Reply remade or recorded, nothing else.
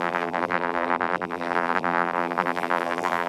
remade